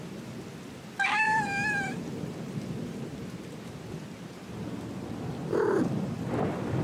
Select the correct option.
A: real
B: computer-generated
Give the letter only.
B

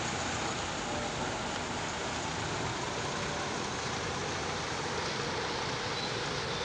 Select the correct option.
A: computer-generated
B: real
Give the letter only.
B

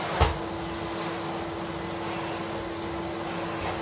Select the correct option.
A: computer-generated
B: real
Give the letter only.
B